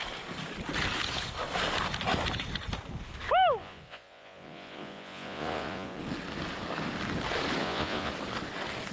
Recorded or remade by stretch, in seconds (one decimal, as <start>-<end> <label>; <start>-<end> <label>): 0.0-3.6 recorded; 3.6-6.0 remade; 6.0-7.6 recorded; 7.6-8.1 remade; 8.1-8.9 recorded